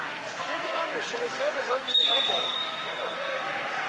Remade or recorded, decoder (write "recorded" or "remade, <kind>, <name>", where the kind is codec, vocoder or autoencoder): remade, codec, SNAC